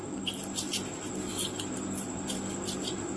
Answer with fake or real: real